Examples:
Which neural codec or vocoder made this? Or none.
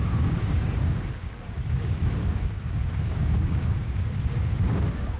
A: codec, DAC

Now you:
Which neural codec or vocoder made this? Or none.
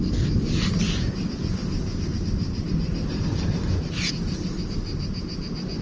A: none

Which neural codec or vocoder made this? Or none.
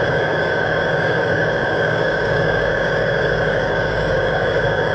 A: codec, DAC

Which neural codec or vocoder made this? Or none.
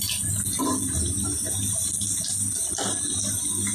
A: none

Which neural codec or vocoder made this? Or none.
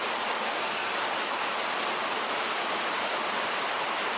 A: none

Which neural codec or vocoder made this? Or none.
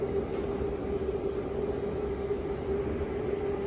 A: none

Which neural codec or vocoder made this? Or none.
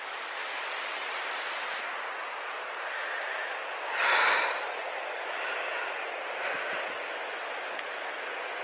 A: none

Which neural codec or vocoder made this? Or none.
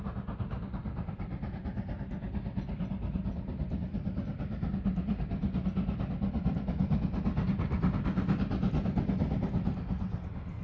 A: none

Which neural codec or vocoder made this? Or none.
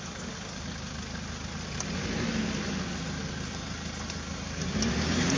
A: none